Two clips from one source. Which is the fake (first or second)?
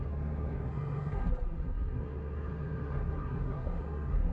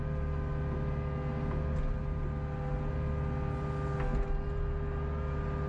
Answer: first